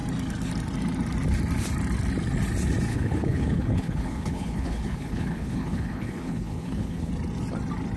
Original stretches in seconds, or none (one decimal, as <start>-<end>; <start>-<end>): 0.0-2.9; 7.1-8.0

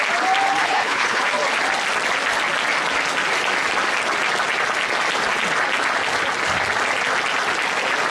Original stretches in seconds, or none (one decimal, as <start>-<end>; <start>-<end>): 0.0-0.6; 1.2-8.1

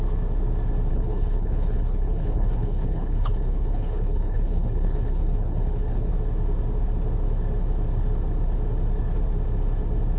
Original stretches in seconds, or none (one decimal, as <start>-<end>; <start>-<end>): 0.0-0.9; 6.1-10.2

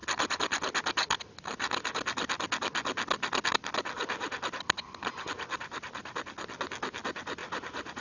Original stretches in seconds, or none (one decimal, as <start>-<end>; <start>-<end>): 0.0-8.0

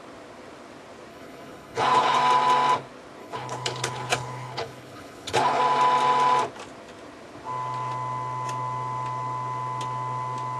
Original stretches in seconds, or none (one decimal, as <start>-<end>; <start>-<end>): 0.0-1.1; 2.2-3.2; 5.6-10.6

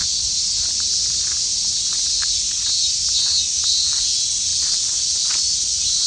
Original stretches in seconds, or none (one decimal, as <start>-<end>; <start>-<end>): 0.0-6.1

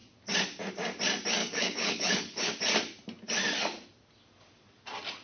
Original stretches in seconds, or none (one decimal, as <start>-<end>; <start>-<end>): 0.0-1.4; 2.5-5.2